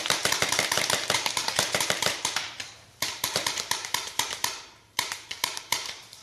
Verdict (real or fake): fake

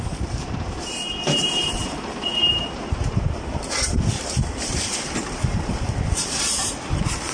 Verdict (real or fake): fake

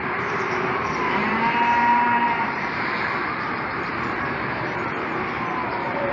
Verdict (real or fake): fake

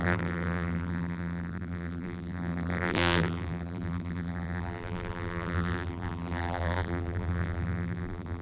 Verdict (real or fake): fake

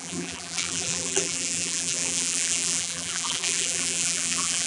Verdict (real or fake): fake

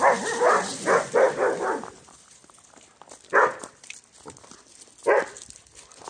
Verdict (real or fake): fake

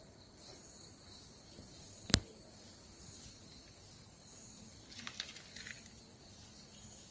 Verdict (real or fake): real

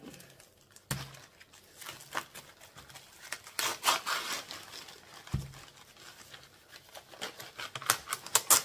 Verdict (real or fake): real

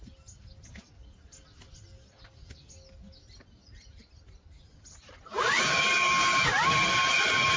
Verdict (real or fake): real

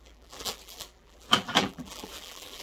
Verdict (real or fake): fake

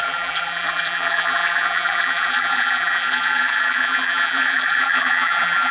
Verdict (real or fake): fake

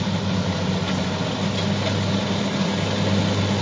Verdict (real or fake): real